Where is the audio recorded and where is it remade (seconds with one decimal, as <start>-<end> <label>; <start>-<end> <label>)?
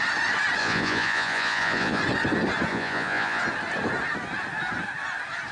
0.0-0.6 recorded; 0.6-2.0 remade; 2.0-2.7 recorded; 2.7-3.4 remade; 3.4-5.5 recorded